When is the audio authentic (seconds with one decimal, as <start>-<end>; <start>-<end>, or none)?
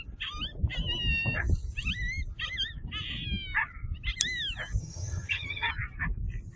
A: 0.0-4.8; 5.7-6.6